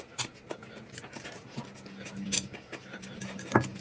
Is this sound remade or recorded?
recorded